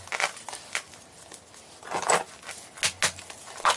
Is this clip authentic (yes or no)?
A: yes